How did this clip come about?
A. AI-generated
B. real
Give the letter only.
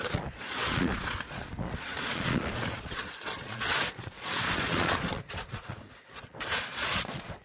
A